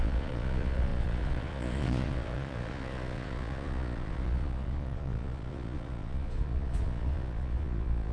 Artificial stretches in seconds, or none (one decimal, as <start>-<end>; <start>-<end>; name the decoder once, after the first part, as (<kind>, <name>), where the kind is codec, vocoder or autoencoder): 0.0-8.1 (vocoder, Vocos)